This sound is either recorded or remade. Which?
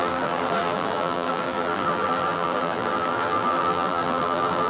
remade